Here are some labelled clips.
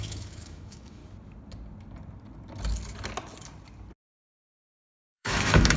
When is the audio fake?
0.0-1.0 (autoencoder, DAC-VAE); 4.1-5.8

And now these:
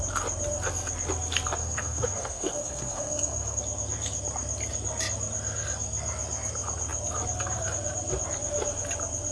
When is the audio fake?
1.6-3.6 (codec, SNAC)

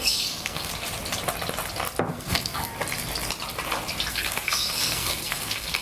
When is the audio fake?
0.0-0.7 (codec, SNAC); 2.1-2.7; 4.1-5.8